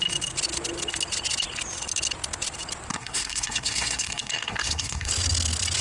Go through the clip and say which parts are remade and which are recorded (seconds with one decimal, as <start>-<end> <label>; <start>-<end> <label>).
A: 0.0-2.9 recorded; 2.9-5.1 remade; 5.1-5.8 recorded